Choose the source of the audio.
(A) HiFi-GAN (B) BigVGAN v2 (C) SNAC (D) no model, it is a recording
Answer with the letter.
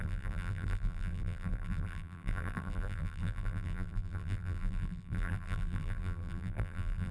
B